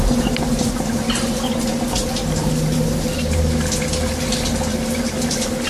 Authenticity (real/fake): real